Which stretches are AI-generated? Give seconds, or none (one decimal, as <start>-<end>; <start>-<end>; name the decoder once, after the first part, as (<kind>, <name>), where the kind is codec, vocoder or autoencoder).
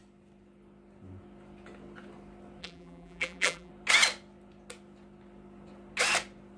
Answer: 2.6-3.7 (vocoder, BigVGAN v2)